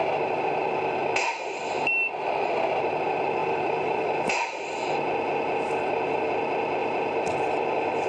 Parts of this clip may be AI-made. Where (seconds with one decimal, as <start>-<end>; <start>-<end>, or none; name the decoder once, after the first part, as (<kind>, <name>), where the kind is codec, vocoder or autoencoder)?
3.4-4.6 (vocoder, BigVGAN v2); 6.8-7.6